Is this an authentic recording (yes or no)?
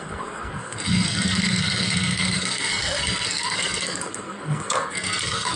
no